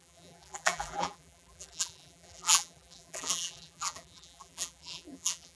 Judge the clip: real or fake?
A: fake